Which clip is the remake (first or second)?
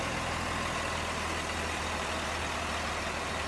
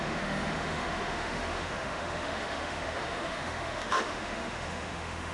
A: second